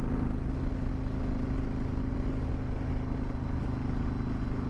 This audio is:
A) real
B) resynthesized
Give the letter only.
A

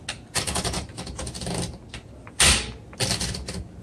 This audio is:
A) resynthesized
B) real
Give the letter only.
B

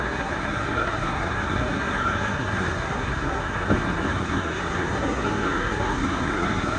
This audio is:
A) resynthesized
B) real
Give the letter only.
A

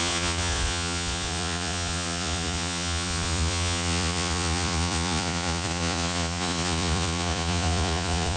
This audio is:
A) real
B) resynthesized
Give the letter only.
B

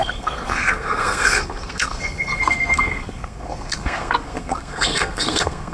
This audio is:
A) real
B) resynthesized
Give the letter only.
B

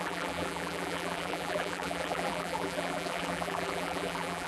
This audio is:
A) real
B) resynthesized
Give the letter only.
B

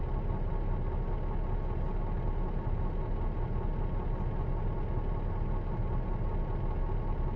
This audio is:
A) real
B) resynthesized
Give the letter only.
A